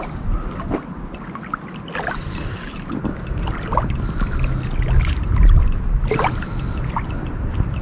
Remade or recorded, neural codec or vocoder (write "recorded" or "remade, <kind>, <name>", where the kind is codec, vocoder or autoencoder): recorded